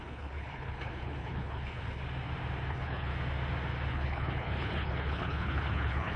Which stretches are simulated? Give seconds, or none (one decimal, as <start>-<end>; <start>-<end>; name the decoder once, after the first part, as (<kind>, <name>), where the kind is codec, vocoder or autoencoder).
0.0-2.0 (codec, HILCodec); 2.7-3.1; 3.9-6.2